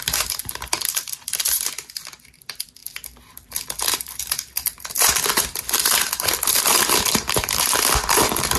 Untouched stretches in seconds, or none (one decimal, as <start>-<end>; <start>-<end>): none